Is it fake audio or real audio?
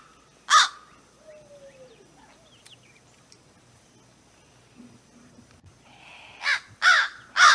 real